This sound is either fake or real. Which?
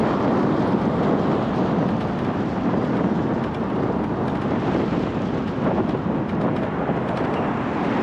real